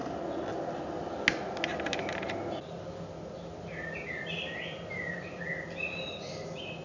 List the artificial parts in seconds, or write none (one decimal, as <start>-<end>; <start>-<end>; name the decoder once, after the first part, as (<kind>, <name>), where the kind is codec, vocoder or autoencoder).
none